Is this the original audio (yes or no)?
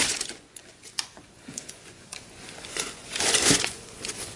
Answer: no